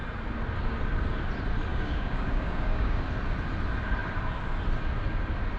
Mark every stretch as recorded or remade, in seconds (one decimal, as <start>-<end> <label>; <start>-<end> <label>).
0.0-1.7 recorded; 1.7-3.0 remade; 3.0-5.6 recorded